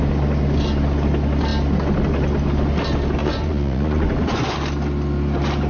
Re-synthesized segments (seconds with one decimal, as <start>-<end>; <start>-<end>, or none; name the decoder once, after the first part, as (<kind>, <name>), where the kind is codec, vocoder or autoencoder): 3.2-4.4 (vocoder, Vocos)